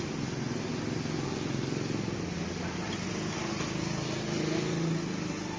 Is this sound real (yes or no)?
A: yes